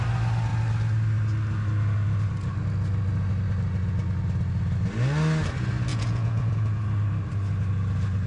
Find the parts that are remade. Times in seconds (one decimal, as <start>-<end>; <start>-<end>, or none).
5.9-6.8